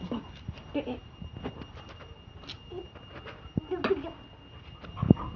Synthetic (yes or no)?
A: no